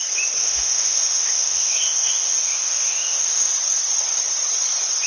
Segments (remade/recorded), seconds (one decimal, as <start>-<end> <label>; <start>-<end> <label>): 0.0-0.4 recorded; 0.4-3.5 remade; 3.5-5.1 recorded

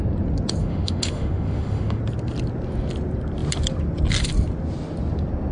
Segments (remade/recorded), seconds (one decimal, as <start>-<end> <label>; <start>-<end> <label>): 0.0-0.6 recorded; 0.6-2.0 remade; 2.0-5.5 recorded

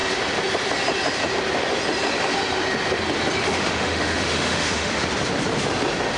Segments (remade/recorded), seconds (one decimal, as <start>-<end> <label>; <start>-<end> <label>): 0.0-3.4 recorded; 3.4-4.9 remade; 4.9-6.2 recorded

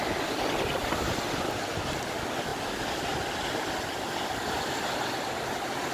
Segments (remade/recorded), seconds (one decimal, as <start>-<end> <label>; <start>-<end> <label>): 0.0-5.9 recorded

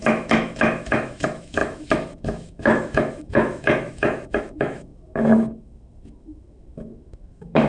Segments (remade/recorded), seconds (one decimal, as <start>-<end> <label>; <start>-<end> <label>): 0.0-7.7 remade

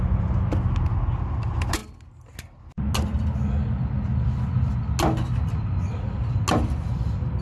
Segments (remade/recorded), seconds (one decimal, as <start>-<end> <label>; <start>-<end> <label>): 0.0-7.4 recorded